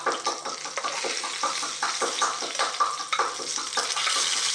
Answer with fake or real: real